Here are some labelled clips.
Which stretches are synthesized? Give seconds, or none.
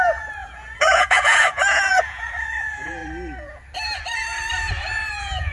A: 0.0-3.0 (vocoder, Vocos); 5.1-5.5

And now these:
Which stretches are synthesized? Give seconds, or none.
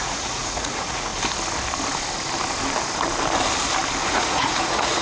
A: 0.0-1.1 (vocoder, Vocos); 4.1-5.0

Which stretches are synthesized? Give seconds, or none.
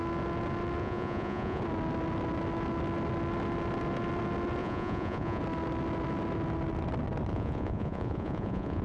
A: 0.8-1.6 (vocoder, Vocos); 4.6-5.4; 7.3-8.8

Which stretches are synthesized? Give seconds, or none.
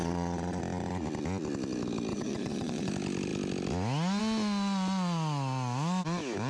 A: 0.0-0.6 (vocoder, Vocos); 2.1-2.9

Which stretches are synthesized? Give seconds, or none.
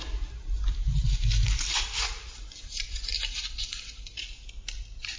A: 2.6-3.1 (vocoder, Vocos)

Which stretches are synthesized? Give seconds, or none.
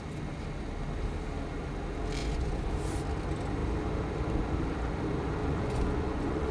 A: 2.2-2.7 (vocoder, Vocos); 5.4-6.5